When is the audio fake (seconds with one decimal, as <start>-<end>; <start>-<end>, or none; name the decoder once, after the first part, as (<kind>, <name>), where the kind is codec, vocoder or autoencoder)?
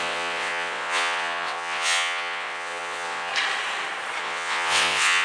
0.0-3.3 (vocoder, WaveNeXt); 4.2-5.2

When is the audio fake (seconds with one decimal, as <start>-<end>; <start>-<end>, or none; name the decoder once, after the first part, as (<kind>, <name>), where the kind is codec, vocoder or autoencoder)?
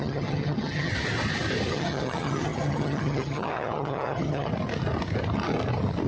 0.0-0.9 (vocoder, HiFi-GAN); 1.7-4.5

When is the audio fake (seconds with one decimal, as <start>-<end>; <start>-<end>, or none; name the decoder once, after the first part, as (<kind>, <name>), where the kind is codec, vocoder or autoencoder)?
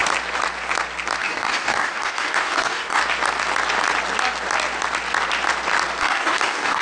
1.2-3.0 (codec, DAC); 6.0-6.8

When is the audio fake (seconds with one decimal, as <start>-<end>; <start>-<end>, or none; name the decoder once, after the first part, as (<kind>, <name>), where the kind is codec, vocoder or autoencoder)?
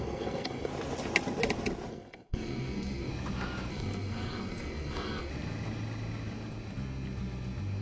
0.0-0.7 (codec, SNAC); 1.9-3.1; 3.7-5.3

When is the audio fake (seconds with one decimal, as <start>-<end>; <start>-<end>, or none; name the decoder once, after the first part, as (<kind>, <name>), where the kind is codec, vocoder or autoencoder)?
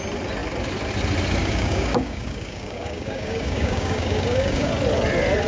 1.4-4.7 (codec, DAC)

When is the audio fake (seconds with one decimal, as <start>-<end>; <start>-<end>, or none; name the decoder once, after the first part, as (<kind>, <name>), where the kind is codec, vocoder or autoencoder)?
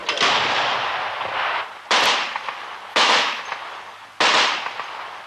2.9-3.4 (autoencoder, DAC-VAE)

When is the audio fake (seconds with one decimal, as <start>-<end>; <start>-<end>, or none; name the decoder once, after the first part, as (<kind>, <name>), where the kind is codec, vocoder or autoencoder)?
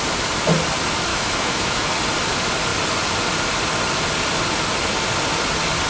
1.1-1.9 (autoencoder, DAC-VAE)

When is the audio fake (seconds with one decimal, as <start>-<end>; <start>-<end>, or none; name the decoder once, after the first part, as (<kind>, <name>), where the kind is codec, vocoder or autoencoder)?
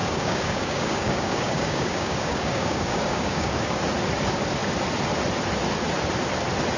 0.0-3.8 (codec, DAC)